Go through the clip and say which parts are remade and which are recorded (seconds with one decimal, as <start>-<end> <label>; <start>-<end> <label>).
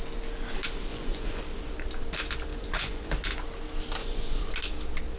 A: 0.0-0.9 recorded; 0.9-1.4 remade; 1.4-2.5 recorded; 2.5-3.1 remade; 3.1-4.0 recorded; 4.0-4.5 remade; 4.5-5.2 recorded